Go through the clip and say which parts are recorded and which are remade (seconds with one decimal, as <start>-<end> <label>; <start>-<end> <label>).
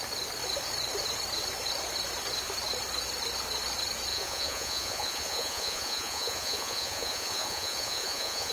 0.0-4.1 recorded; 4.1-8.5 remade